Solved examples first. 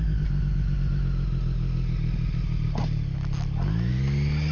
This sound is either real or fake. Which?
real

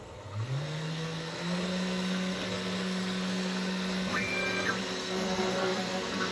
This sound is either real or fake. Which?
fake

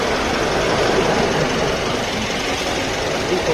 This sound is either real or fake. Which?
real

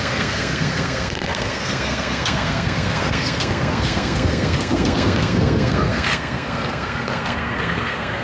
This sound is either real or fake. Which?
fake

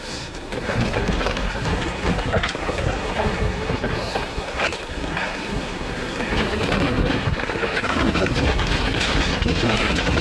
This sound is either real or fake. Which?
fake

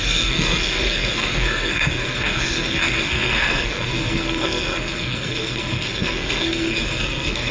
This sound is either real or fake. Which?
fake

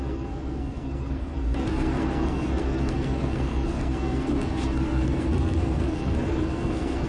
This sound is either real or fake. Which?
fake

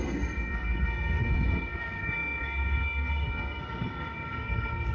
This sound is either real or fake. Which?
fake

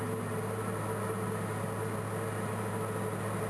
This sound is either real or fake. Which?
real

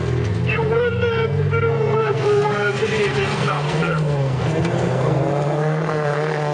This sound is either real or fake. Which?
fake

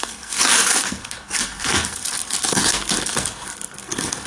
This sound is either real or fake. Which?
fake